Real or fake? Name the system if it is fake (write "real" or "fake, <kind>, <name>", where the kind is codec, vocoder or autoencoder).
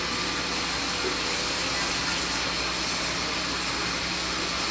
real